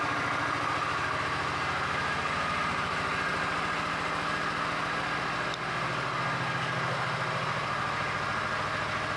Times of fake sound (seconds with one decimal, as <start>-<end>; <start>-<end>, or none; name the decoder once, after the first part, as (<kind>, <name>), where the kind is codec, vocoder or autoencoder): none